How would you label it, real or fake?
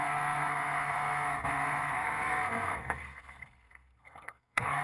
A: fake